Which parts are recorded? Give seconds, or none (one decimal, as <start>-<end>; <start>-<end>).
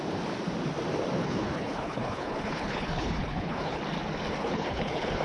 0.0-1.2; 3.8-4.4